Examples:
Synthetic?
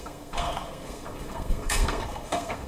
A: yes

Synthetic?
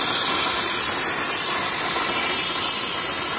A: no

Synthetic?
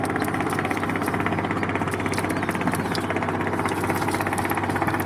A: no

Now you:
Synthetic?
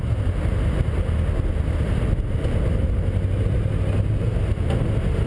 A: no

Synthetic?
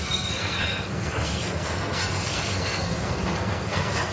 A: yes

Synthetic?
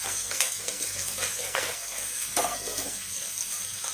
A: yes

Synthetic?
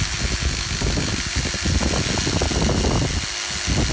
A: no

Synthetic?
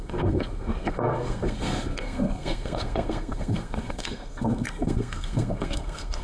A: yes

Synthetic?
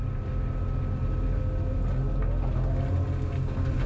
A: no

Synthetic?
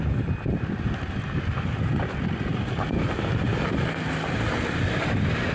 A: no